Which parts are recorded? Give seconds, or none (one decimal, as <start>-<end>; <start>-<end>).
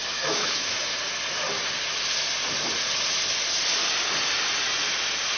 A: 0.8-5.4